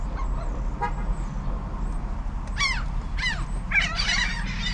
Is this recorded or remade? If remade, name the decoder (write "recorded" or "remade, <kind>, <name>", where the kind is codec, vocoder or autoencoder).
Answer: recorded